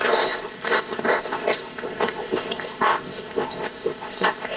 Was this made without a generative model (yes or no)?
no